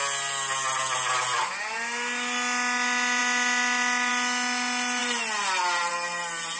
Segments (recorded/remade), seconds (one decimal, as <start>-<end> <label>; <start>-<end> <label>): 0.0-6.6 recorded